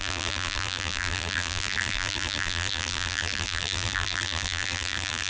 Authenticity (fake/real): fake